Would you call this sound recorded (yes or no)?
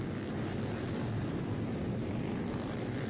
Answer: no